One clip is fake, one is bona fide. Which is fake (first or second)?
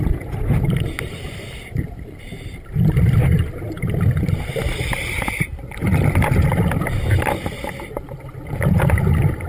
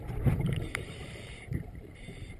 second